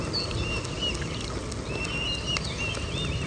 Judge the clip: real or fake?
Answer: real